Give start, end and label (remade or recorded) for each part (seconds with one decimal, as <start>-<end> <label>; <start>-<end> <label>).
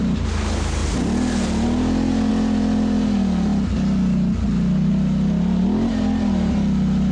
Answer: 0.0-7.1 recorded